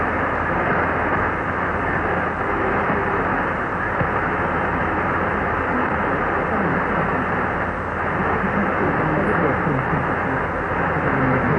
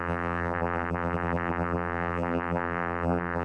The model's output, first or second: second